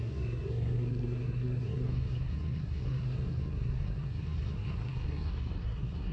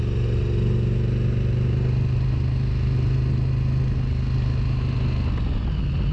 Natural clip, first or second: second